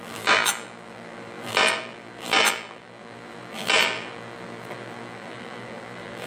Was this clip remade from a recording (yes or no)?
yes